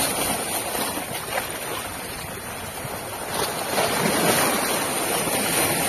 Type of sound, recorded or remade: recorded